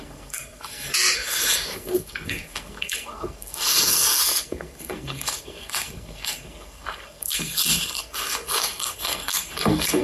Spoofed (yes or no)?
yes